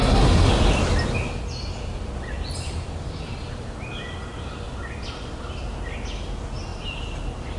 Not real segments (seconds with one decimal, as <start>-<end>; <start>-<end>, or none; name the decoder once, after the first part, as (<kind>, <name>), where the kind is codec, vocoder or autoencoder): 0.0-0.5 (codec, SNAC)

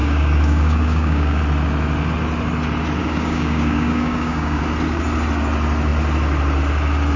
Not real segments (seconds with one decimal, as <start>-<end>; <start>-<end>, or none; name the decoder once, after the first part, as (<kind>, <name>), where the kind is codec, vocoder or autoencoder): 0.0-1.4 (codec, DAC); 3.0-4.6